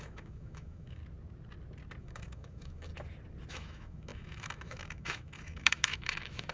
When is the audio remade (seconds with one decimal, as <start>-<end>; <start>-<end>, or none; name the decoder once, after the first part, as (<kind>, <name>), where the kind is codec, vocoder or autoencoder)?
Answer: 0.0-1.0 (autoencoder, DAC-VAE); 2.0-2.9; 3.5-6.5